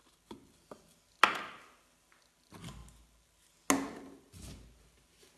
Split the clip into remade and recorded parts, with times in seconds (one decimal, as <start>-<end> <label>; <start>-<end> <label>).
0.0-5.4 recorded

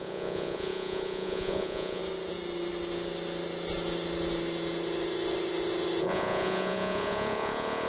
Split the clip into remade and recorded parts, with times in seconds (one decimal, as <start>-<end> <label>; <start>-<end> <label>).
0.0-2.0 remade; 2.0-6.0 recorded; 6.0-7.9 remade

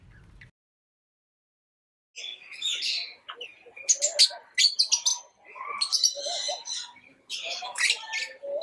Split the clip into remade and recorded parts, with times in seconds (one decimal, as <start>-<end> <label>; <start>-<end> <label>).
0.0-2.2 recorded; 2.2-2.8 remade; 2.8-7.1 recorded; 7.1-7.8 remade; 7.8-8.6 recorded